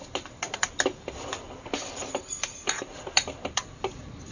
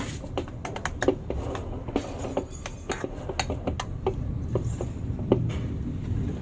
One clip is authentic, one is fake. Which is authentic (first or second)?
second